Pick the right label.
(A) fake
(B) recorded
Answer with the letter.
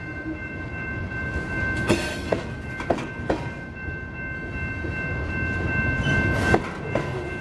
B